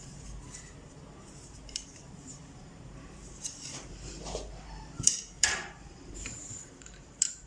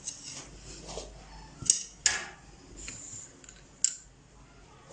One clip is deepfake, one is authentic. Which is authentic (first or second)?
second